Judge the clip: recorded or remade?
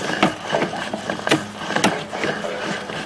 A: recorded